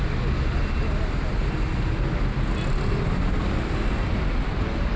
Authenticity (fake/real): real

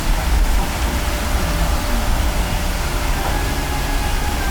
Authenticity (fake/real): real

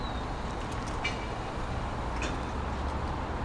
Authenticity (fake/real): real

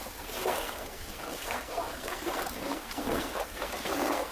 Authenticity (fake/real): fake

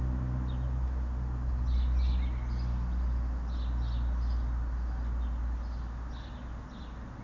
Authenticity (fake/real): real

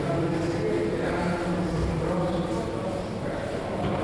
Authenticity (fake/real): real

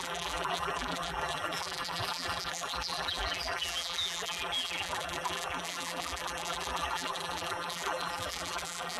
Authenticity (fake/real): fake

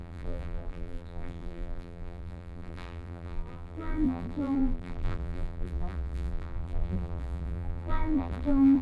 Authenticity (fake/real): fake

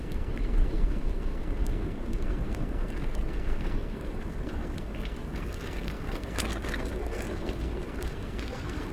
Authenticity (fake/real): fake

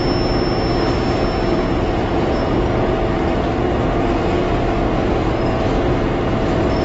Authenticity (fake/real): real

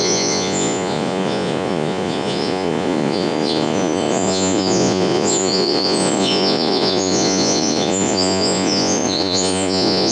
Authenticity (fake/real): fake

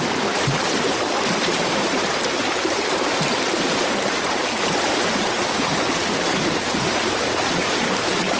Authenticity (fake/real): fake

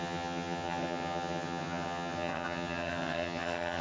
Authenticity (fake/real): fake